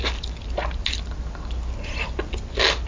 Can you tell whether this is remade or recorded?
recorded